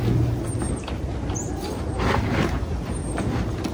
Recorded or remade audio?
recorded